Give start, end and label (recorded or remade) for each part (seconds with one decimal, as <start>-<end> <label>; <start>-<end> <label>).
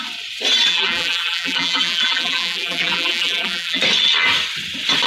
0.0-0.7 recorded; 0.7-3.8 remade; 3.8-5.1 recorded